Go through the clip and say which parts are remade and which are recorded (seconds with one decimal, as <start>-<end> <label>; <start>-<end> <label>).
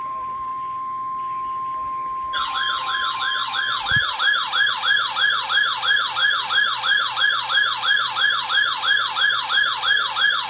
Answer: 0.0-0.5 remade; 0.5-4.7 recorded; 4.7-10.5 remade